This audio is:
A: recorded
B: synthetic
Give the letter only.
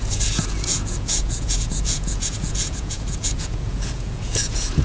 B